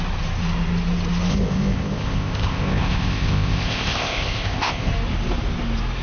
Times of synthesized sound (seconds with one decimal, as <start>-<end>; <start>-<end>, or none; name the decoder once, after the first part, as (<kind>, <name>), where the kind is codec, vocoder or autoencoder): 1.3-4.9 (codec, ZipCodec)

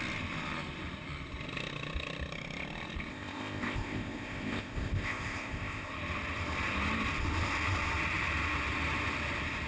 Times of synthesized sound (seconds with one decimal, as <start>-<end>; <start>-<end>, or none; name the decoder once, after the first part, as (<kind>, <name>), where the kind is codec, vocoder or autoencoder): 3.1-5.9 (codec, ZipCodec)